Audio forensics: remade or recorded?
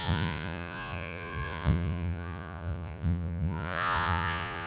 remade